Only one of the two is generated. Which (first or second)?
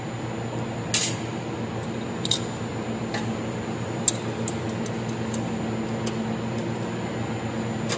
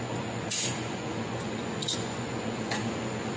second